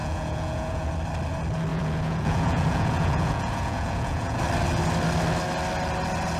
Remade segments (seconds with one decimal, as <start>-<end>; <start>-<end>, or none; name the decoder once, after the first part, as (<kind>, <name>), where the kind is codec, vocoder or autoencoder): 0.0-0.9 (vocoder, Vocos); 1.7-4.4